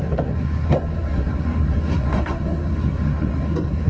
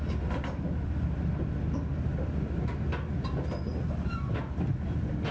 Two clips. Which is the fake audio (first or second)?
first